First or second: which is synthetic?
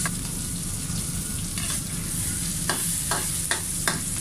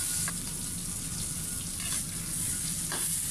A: first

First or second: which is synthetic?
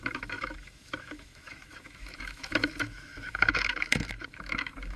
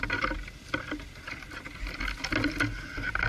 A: first